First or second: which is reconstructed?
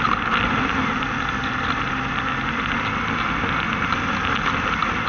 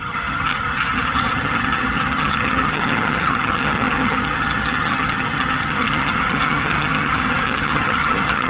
second